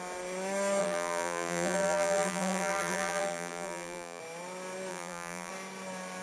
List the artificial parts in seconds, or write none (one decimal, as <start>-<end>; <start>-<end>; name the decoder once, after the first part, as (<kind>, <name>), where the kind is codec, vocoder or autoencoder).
0.8-4.2 (vocoder, BigVGAN v2); 4.9-5.5